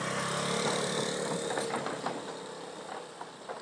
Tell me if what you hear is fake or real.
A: real